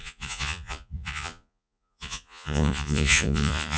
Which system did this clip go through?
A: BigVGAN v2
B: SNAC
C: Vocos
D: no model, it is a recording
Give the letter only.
C